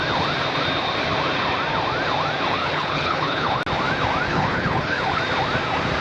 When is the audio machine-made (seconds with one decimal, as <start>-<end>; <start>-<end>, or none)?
2.6-3.6; 4.3-5.2